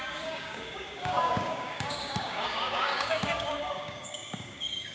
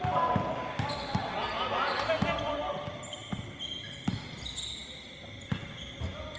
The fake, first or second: first